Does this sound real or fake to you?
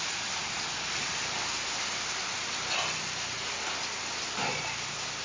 real